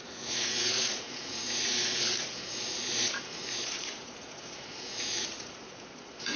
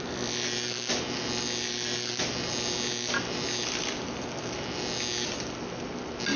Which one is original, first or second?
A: second